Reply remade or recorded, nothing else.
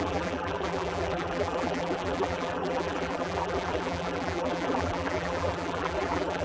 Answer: remade